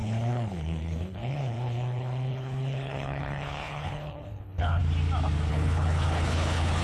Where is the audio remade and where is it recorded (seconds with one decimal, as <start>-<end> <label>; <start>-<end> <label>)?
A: 0.0-4.8 remade; 4.8-5.5 recorded; 5.5-6.8 remade

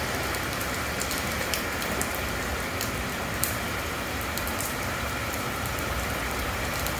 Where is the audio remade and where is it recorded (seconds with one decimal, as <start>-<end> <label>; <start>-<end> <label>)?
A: 0.0-2.5 remade; 2.5-3.2 recorded; 3.2-7.0 remade

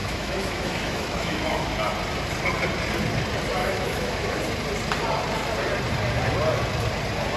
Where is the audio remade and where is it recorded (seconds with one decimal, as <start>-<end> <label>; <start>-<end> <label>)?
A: 0.0-1.7 remade; 1.7-3.6 recorded; 3.6-4.4 remade; 4.4-7.4 recorded

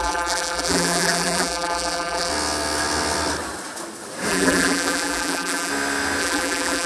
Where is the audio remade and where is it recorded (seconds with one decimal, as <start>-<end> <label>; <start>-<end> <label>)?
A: 0.0-2.3 remade; 2.3-4.3 recorded; 4.3-5.7 remade; 5.7-6.2 recorded; 6.2-6.9 remade

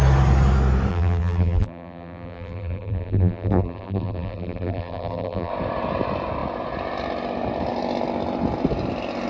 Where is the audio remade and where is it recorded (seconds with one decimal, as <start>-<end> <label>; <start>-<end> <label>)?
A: 0.0-0.9 recorded; 0.9-5.5 remade; 5.5-9.3 recorded

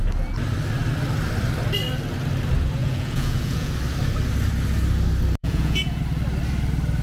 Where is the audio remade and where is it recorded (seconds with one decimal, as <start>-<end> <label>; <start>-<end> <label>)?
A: 0.0-2.8 recorded; 2.8-3.7 remade; 3.7-5.4 recorded; 5.4-6.0 remade; 6.0-7.0 recorded

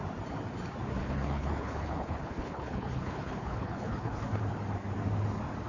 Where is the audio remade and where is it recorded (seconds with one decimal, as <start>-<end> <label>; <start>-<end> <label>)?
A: 0.0-1.0 recorded; 1.0-4.4 remade; 4.4-5.7 recorded